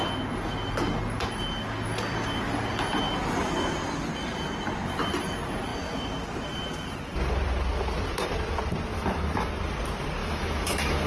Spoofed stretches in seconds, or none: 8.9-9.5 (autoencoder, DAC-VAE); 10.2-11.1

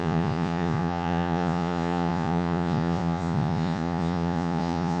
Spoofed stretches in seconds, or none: 0.0-5.0 (vocoder, Vocos)

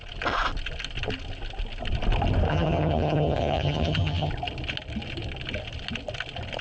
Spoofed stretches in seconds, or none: 2.5-4.3 (vocoder, HiFi-GAN)

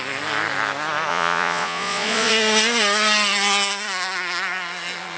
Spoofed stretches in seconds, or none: 1.1-2.3 (vocoder, Vocos)

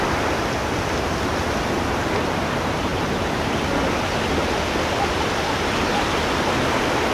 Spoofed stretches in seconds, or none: none

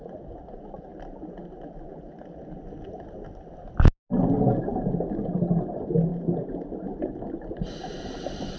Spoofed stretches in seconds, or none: none